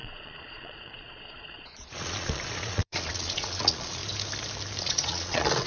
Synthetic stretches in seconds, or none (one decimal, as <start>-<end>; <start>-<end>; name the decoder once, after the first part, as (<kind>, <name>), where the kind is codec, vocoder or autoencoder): 0.0-4.0 (vocoder, Vocos); 4.8-5.7